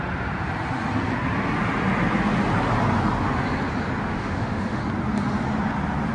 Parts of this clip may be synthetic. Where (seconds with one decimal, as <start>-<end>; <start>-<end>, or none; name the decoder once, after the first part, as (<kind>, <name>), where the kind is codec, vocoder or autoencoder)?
4.0-4.8 (autoencoder, DAC-VAE)